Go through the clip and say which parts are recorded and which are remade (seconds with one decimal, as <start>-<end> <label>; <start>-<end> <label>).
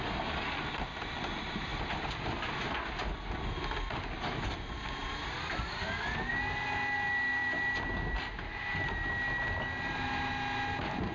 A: 0.0-11.1 recorded